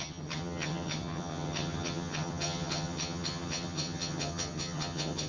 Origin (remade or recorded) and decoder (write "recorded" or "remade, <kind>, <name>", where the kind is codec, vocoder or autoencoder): remade, vocoder, HiFi-GAN